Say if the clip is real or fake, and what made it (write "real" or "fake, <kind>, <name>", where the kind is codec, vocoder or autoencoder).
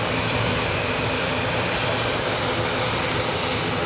fake, vocoder, BigVGAN v2